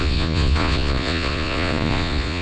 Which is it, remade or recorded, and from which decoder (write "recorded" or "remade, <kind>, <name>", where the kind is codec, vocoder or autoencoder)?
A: remade, vocoder, Vocos